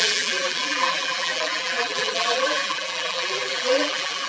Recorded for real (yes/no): no